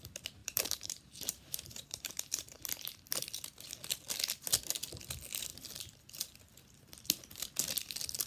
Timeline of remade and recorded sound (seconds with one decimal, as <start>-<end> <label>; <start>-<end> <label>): 0.0-0.4 recorded; 0.4-2.6 remade; 2.6-8.3 recorded